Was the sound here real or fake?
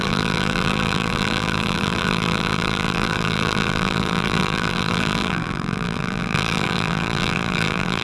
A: fake